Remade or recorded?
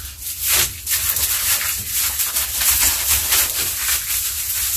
recorded